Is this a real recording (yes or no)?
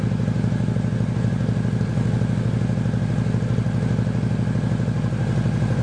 yes